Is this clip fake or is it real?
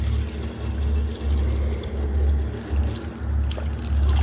real